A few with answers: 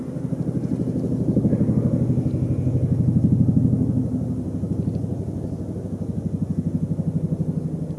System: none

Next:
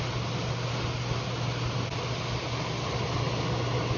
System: none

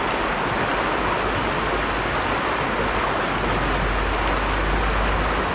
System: none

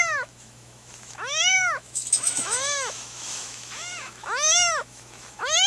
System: autoencoder, DAC-VAE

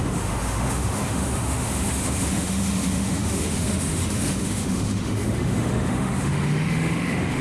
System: autoencoder, DAC-VAE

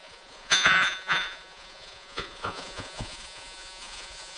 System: vocoder, Vocos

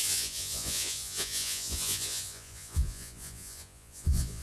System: vocoder, Vocos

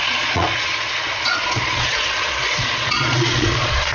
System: vocoder, Vocos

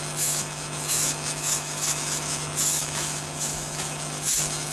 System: autoencoder, DAC-VAE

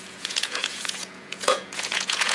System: vocoder, Vocos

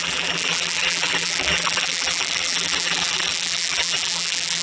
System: vocoder, BigVGAN v2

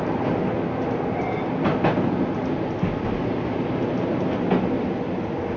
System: none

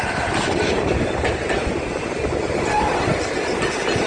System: vocoder, BigVGAN v2